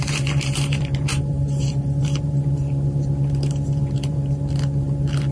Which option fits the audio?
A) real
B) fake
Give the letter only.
B